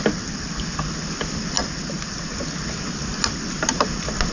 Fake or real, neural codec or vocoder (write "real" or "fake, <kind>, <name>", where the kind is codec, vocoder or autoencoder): real